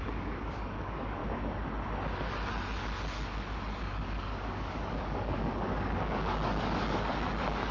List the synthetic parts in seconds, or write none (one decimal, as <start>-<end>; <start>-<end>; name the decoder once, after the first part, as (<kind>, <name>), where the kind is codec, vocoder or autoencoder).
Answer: 0.0-1.2 (codec, DAC); 3.8-7.7

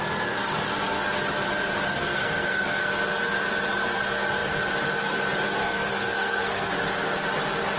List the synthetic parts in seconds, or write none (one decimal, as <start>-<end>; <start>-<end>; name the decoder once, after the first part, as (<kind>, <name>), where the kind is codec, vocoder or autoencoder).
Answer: 1.9-2.9 (codec, SNAC); 5.6-6.7

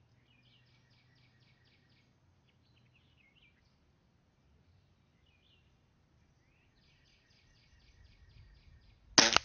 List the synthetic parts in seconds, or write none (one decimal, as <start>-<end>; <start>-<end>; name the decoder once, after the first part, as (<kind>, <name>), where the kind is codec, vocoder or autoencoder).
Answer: none

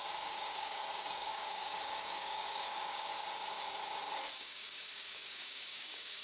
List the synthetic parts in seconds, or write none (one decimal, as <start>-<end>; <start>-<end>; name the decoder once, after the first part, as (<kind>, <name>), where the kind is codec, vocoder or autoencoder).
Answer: 0.0-3.1 (codec, DAC); 4.4-6.2

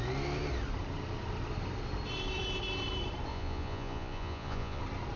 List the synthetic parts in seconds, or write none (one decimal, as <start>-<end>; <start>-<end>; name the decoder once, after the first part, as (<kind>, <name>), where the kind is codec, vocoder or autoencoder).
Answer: 3.3-4.8 (vocoder, Vocos)

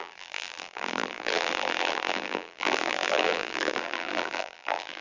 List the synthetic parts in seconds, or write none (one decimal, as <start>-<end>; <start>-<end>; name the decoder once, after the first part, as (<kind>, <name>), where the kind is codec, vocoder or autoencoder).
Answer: 0.0-5.0 (vocoder, BigVGAN v2)

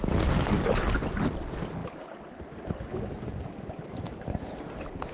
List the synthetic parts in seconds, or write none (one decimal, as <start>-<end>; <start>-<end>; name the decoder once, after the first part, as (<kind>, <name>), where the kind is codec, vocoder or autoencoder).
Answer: none